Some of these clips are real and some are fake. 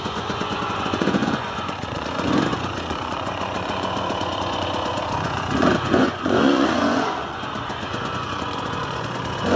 fake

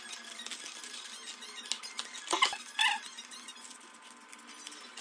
real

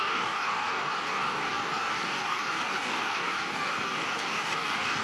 fake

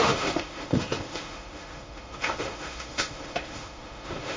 fake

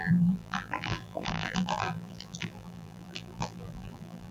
fake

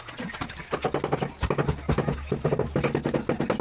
real